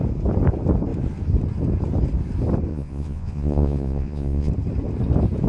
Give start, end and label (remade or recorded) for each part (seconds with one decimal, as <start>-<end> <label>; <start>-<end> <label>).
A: 0.0-2.7 recorded; 2.7-4.5 remade; 4.5-5.5 recorded